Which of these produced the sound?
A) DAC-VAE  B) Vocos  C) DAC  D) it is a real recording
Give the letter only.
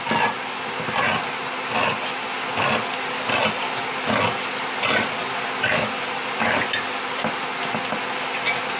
D